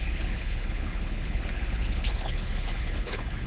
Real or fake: fake